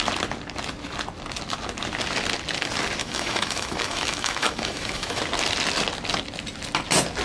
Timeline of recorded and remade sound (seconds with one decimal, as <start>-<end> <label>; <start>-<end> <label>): 0.0-3.0 recorded; 3.0-5.2 remade; 5.2-7.2 recorded